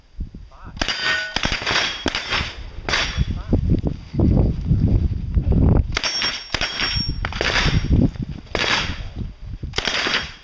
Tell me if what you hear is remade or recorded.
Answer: recorded